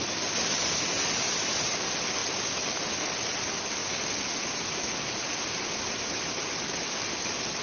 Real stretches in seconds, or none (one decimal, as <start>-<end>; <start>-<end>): 0.0-7.6